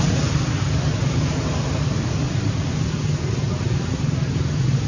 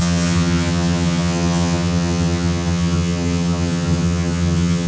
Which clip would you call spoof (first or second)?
second